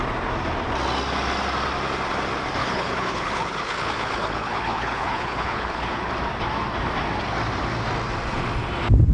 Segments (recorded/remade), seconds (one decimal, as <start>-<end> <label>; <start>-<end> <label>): 0.0-2.6 recorded; 2.6-6.1 remade; 6.1-9.1 recorded